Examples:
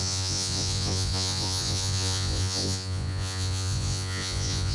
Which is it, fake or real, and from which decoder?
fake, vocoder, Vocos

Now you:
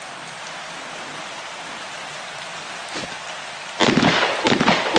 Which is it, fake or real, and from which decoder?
real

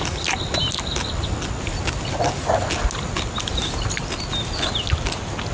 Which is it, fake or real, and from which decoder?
real